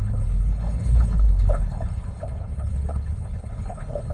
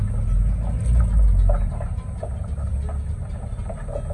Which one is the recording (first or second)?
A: second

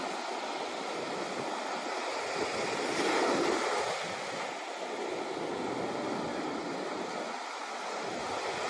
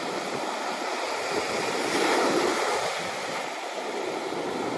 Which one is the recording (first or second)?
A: first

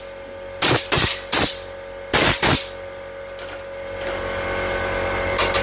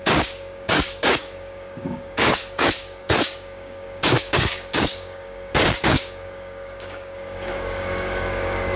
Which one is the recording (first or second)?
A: first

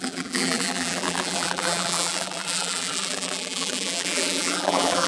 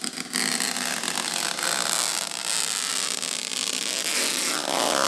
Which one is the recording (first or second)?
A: second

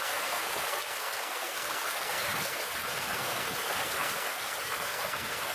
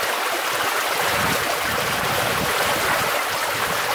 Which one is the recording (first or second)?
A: second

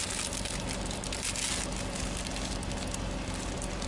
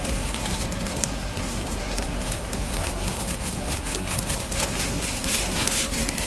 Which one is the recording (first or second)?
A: first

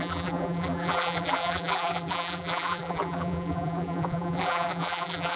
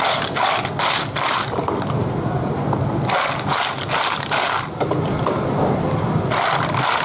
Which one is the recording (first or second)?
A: second